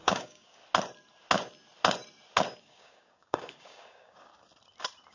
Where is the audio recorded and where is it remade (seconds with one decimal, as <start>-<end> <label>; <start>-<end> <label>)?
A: 0.0-0.6 remade; 0.6-2.6 recorded; 2.6-4.3 remade; 4.3-5.1 recorded